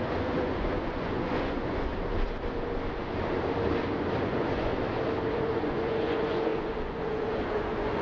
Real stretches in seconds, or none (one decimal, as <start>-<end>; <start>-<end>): 1.9-4.2; 4.7-5.3